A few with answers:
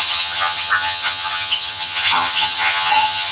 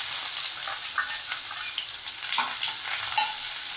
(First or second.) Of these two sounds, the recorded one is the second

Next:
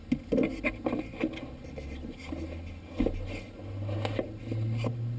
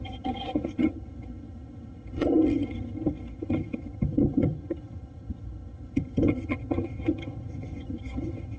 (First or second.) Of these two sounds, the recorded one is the first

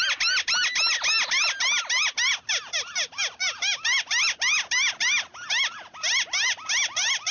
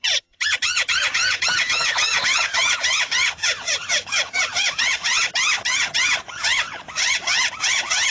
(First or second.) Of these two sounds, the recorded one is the first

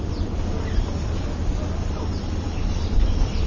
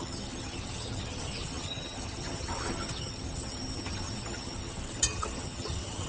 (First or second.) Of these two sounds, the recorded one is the first